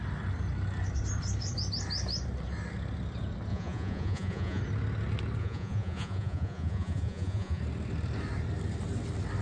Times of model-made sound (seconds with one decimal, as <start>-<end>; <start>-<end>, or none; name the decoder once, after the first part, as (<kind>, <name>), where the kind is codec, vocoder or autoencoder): 3.5-4.6 (vocoder, Vocos); 5.4-7.6